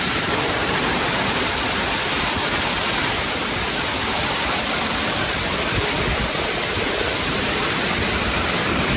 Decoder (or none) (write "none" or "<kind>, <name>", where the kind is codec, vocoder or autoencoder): vocoder, BigVGAN v2